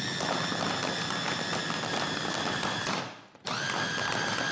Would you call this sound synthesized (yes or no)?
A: no